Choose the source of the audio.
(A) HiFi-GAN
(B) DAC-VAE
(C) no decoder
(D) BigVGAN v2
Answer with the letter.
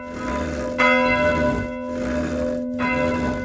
C